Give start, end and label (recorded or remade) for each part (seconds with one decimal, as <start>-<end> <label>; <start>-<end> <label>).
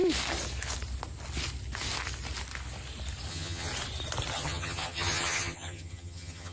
0.0-3.3 recorded; 3.3-3.7 remade; 3.7-4.3 recorded; 4.3-6.5 remade